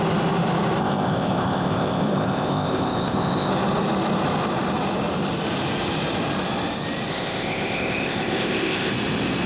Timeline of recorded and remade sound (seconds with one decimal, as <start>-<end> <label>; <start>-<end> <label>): 0.0-0.8 recorded; 0.8-3.5 remade; 3.5-7.1 recorded; 7.1-8.9 remade; 8.9-9.5 recorded